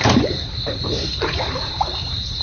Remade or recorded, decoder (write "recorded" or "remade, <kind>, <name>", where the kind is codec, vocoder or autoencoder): remade, vocoder, BigVGAN v2